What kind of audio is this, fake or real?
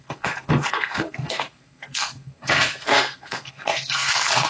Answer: fake